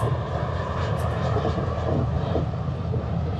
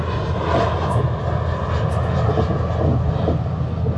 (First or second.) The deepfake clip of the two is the first